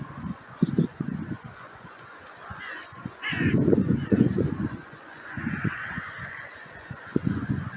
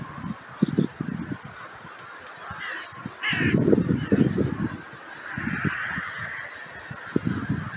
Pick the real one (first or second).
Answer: second